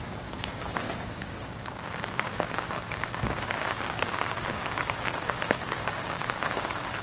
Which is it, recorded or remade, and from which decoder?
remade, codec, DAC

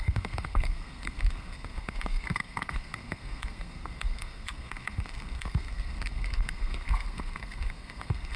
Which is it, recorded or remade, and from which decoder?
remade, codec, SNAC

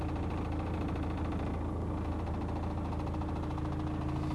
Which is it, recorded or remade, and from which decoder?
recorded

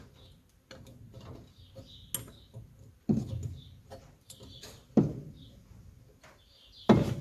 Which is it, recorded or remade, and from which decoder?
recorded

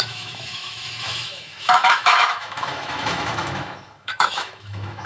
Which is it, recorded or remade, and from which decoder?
remade, autoencoder, DAC-VAE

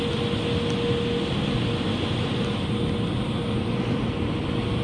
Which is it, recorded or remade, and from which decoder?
recorded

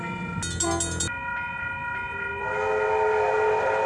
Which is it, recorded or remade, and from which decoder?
recorded